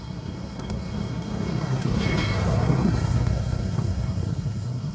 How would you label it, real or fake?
fake